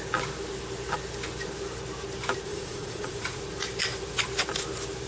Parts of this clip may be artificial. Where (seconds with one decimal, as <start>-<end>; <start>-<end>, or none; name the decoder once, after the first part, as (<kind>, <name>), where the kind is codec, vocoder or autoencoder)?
2.5-3.4 (vocoder, Vocos)